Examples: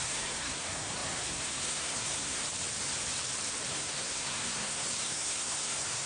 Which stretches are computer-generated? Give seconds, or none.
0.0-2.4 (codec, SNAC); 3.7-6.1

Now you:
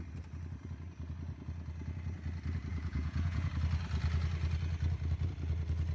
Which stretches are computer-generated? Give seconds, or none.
2.7-3.5 (vocoder, Vocos)